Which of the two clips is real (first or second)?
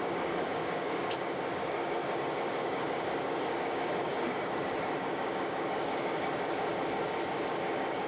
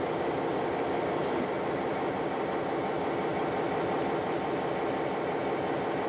second